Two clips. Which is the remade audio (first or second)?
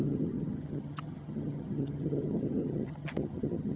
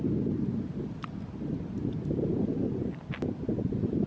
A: first